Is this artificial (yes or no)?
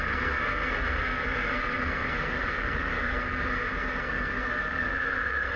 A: yes